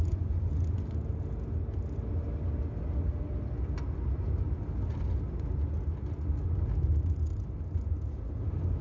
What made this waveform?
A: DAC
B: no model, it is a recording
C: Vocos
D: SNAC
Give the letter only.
B